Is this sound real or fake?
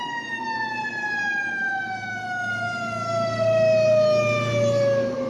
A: real